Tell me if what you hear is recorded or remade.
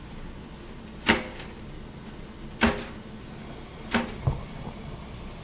recorded